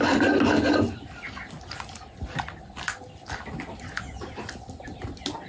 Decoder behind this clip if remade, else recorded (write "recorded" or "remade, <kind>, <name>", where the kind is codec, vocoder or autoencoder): recorded